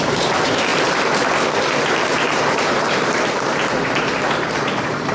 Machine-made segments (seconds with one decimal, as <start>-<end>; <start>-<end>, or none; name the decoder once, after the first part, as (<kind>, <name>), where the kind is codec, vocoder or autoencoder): 0.0-0.7 (vocoder, BigVGAN v2); 1.8-5.1